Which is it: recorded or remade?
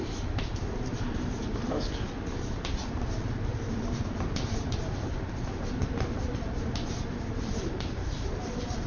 remade